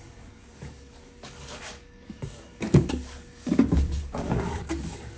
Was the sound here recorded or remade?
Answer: remade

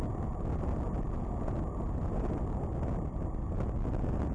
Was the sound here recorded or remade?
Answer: recorded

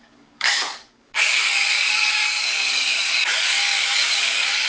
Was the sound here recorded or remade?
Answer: remade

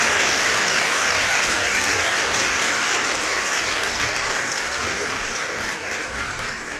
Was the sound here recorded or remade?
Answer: remade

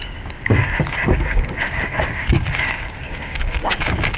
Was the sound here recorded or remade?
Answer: remade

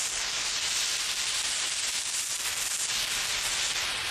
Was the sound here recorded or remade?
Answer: recorded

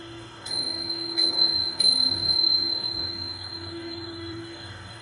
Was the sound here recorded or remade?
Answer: remade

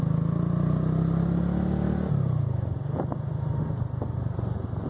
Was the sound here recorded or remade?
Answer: recorded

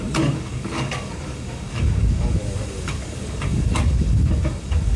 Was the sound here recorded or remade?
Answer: remade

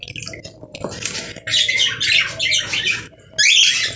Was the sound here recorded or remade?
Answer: recorded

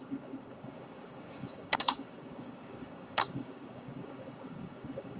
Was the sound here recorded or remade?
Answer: remade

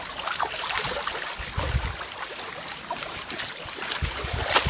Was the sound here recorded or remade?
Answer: recorded